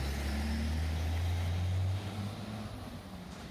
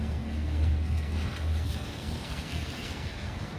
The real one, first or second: first